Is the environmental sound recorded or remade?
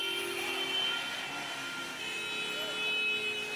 recorded